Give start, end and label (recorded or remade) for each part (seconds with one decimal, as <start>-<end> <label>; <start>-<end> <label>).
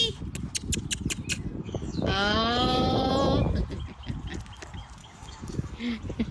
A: 0.0-1.6 recorded; 1.6-3.1 remade; 3.1-5.0 recorded; 5.0-5.8 remade; 5.8-6.3 recorded